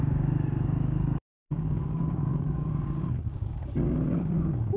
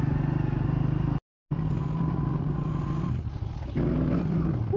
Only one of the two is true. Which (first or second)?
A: second